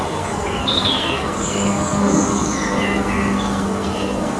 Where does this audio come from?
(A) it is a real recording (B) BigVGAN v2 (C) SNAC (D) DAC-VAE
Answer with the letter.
C